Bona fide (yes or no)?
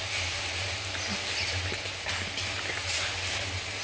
yes